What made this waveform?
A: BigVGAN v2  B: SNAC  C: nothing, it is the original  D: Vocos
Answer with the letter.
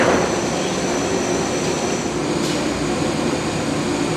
C